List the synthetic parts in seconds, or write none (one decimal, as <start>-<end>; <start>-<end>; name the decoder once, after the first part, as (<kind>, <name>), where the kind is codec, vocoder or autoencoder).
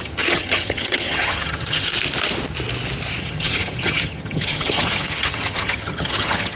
0.0-1.9 (vocoder, HiFi-GAN); 3.2-6.6